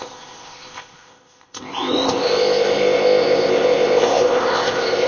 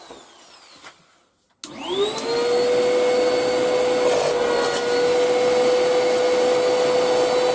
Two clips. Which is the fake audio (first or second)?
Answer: first